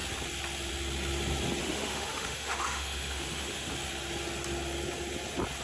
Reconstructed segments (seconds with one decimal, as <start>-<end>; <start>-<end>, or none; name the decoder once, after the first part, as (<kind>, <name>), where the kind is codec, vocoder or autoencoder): 1.6-3.7 (autoencoder, DAC-VAE)